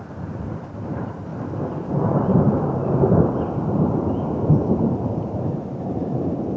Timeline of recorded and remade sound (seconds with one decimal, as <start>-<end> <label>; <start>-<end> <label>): 0.0-1.3 remade; 1.3-1.9 recorded; 1.9-6.6 remade